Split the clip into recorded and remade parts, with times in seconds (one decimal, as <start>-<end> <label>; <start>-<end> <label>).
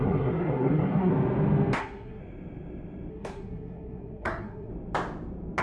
0.0-1.1 remade; 1.1-1.8 recorded; 1.8-2.2 remade; 2.2-3.1 recorded; 3.1-4.7 remade; 4.7-5.6 recorded